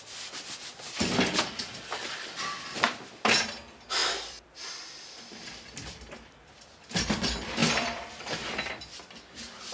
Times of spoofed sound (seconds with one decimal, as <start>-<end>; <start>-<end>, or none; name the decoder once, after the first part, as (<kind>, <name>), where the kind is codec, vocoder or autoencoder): 4.0-6.8 (vocoder, BigVGAN v2); 7.6-8.8